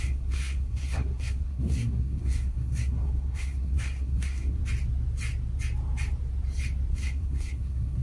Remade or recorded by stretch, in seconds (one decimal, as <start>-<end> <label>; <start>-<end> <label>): 0.0-4.6 remade; 4.6-6.9 recorded; 6.9-8.0 remade

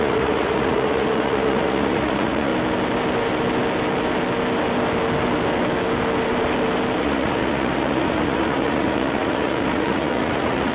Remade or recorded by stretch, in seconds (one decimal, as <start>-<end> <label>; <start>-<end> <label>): 0.0-2.5 remade; 2.5-7.0 recorded; 7.0-10.7 remade

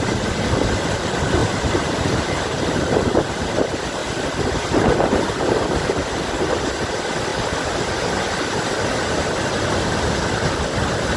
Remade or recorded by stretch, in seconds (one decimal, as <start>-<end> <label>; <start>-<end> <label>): 0.0-1.4 recorded; 1.4-3.4 remade; 3.4-11.2 recorded

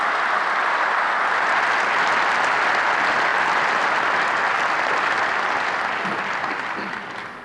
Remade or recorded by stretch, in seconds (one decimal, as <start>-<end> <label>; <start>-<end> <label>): 0.0-7.4 recorded

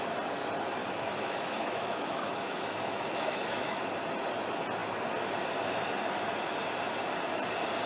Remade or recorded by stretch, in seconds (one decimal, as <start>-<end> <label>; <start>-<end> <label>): 0.0-0.8 recorded; 0.8-3.8 remade; 3.8-7.9 recorded

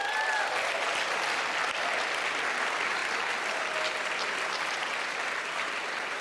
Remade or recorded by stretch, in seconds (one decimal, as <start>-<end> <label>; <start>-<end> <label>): 0.0-6.2 recorded

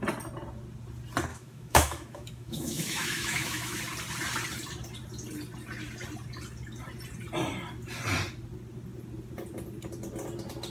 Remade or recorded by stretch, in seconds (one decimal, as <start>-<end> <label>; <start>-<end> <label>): 0.0-1.3 recorded; 1.3-3.8 remade; 3.8-10.7 recorded